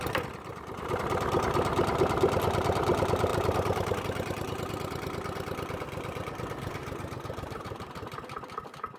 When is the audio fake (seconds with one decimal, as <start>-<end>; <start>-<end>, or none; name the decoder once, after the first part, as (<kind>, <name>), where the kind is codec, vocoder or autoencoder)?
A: 0.5-1.0 (vocoder, BigVGAN v2); 3.3-4.0; 6.7-7.9